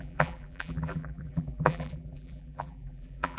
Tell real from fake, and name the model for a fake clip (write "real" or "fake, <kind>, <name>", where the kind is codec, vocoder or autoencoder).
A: fake, vocoder, BigVGAN v2